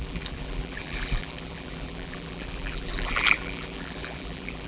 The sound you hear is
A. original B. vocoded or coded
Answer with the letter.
B